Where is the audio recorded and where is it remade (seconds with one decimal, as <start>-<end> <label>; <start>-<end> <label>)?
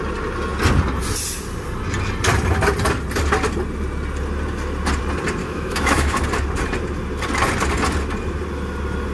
0.0-5.4 recorded; 5.4-6.2 remade; 6.2-9.1 recorded